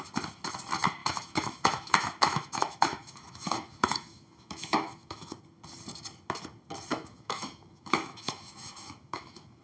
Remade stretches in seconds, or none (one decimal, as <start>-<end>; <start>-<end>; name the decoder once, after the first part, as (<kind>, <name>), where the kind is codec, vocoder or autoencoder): 1.0-5.4 (autoencoder, DAC-VAE); 6.9-9.6